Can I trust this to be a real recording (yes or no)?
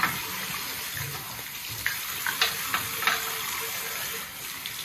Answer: yes